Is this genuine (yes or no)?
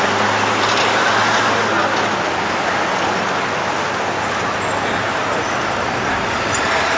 yes